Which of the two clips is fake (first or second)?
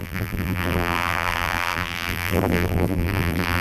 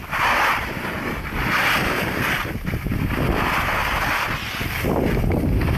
first